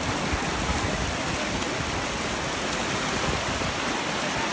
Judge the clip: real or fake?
real